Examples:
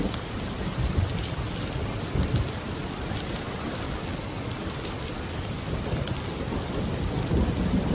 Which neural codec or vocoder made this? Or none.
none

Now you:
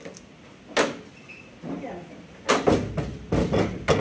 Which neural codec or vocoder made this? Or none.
none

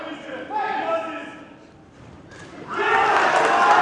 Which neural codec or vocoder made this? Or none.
vocoder, BigVGAN v2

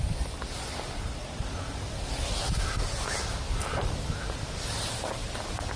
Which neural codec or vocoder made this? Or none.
none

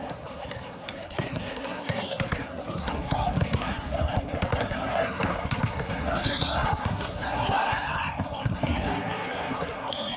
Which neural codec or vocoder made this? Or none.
codec, SNAC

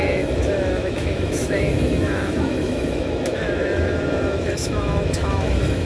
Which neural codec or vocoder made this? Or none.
autoencoder, DAC-VAE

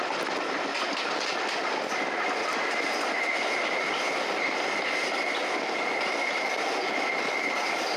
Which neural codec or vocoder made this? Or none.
none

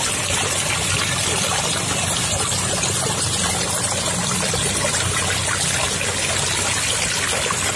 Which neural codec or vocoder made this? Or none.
none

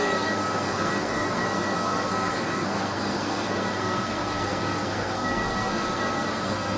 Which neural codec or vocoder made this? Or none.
codec, SNAC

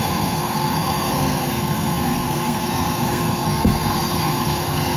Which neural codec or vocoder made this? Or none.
codec, SNAC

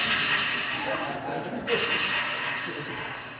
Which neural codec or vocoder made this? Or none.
none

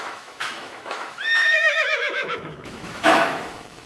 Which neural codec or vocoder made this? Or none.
autoencoder, DAC-VAE